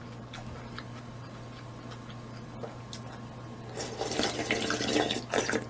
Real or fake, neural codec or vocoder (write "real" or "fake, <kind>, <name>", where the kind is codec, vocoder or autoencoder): real